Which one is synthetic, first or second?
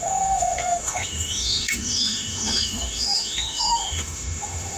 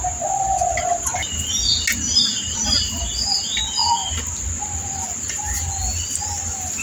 first